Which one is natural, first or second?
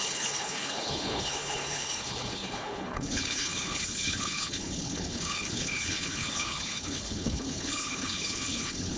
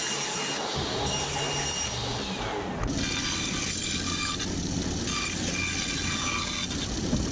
second